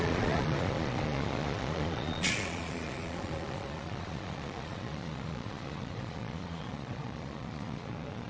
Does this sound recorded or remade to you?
remade